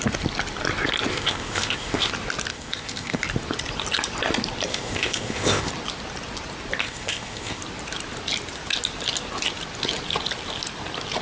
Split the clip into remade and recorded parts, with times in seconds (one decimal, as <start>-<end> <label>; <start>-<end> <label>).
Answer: 0.0-1.1 recorded; 1.1-2.1 remade; 2.1-2.5 recorded; 2.5-3.2 remade; 3.2-4.7 recorded; 4.7-5.7 remade; 5.7-6.8 recorded; 6.8-7.6 remade; 7.6-11.2 recorded